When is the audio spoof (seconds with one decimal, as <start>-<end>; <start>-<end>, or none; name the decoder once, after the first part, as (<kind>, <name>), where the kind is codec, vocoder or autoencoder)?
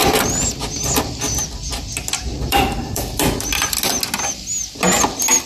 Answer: 0.0-0.6 (vocoder, BigVGAN v2); 2.3-3.7